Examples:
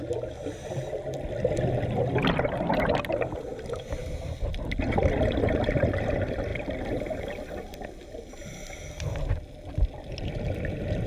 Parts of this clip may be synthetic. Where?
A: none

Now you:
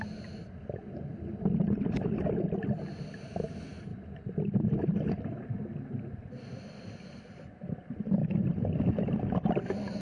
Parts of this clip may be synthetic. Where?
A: 3.9-4.7 (vocoder, BigVGAN v2)

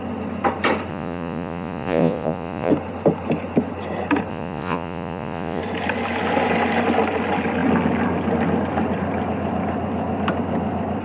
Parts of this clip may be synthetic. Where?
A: 0.9-2.7 (vocoder, Vocos); 4.3-5.6

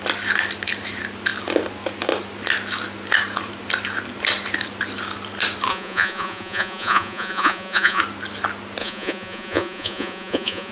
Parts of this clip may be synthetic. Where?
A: 5.7-8.0 (vocoder, Vocos); 8.8-10.7

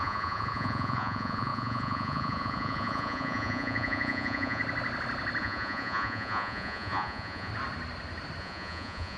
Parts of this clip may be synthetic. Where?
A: 0.0-4.6 (vocoder, Vocos); 5.4-7.5; 8.4-9.2

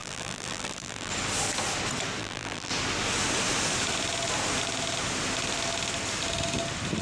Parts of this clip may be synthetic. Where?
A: 0.0-1.1 (vocoder, BigVGAN v2); 2.2-2.7

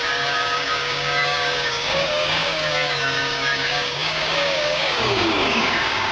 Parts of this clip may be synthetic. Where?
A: 0.0-6.1 (codec, DAC)